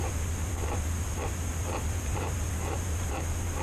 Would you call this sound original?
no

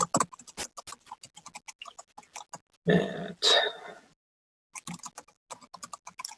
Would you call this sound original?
yes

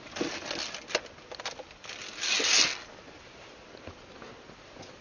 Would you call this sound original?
yes